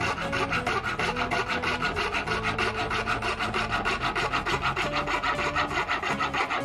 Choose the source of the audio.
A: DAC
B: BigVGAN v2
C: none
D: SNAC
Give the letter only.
C